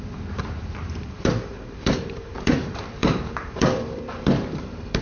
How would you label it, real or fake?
fake